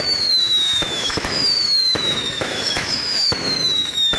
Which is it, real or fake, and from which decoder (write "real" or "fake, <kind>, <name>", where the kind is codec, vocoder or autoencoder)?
fake, autoencoder, DAC-VAE